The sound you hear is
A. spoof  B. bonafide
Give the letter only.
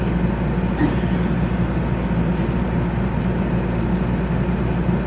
B